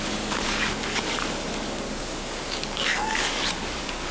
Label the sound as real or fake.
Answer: fake